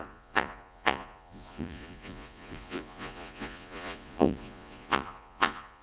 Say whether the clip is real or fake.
fake